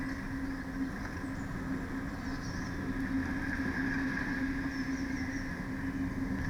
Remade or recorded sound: recorded